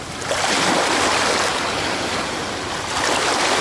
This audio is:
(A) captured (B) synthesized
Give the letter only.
A